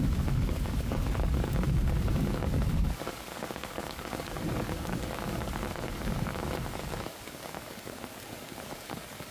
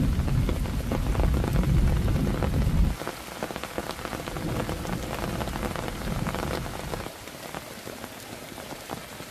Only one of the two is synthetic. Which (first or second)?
first